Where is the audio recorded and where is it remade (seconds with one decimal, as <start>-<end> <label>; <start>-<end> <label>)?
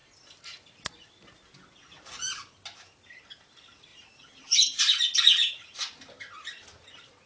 0.0-3.9 recorded; 3.9-5.8 remade; 5.8-7.3 recorded